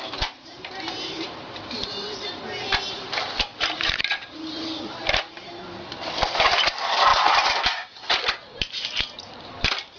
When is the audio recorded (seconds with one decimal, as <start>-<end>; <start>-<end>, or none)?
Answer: 2.4-3.5; 5.6-7.1; 8.2-10.0